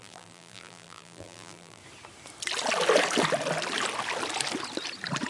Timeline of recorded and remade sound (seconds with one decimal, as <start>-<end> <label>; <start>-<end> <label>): 0.0-1.8 remade; 1.8-5.3 recorded